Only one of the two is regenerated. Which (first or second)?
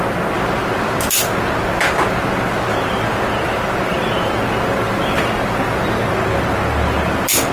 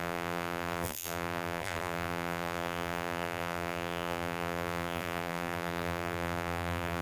second